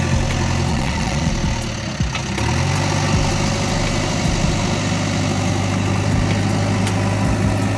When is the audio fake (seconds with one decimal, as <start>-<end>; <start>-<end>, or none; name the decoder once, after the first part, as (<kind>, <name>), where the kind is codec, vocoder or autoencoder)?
0.7-1.3 (vocoder, Vocos)